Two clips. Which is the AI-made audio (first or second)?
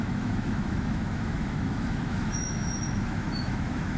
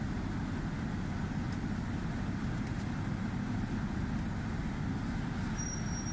first